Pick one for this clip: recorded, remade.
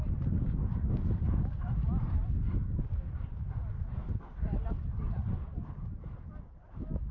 recorded